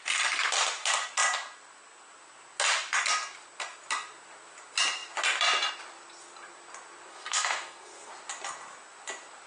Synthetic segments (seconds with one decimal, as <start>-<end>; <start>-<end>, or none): 7.1-8.1

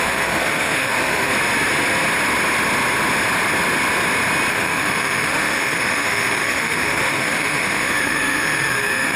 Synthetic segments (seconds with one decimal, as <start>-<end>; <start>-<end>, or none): 0.0-1.3; 4.5-9.2

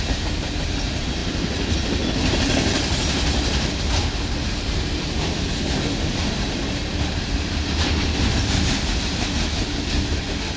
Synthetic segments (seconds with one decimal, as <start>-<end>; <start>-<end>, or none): none

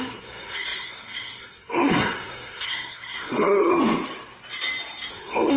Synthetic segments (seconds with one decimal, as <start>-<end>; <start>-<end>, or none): 0.0-3.7; 5.1-5.6

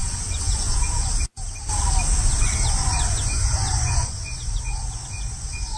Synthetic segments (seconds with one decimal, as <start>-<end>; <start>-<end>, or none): 0.0-1.1; 2.2-5.8

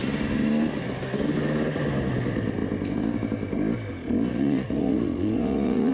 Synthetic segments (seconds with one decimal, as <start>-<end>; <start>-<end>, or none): 4.3-5.9

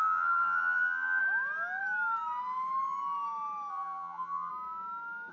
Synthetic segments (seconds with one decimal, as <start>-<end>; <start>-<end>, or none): 0.0-1.2; 3.7-4.5

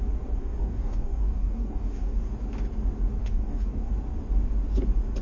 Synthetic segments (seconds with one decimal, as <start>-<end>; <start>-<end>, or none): 0.4-2.3; 3.2-3.9